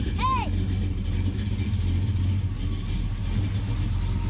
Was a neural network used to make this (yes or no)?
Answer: no